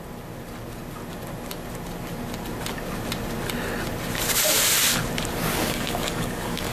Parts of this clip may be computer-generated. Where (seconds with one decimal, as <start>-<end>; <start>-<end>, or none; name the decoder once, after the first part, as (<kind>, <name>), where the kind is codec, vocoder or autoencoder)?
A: 5.5-6.7 (codec, DAC)